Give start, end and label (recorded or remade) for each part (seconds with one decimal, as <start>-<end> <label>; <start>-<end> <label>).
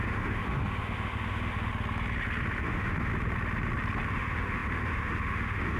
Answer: 0.0-1.7 remade; 1.7-2.6 recorded; 2.6-3.1 remade; 3.1-4.1 recorded; 4.1-5.8 remade